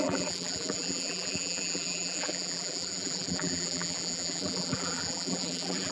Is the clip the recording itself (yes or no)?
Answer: no